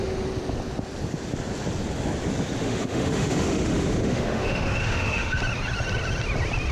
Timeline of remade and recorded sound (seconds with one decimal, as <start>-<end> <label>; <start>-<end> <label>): 0.0-2.6 recorded; 2.6-5.4 remade; 5.4-6.7 recorded